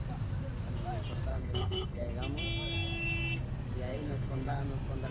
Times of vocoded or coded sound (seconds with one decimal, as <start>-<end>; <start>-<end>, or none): 1.3-2.1; 3.9-4.6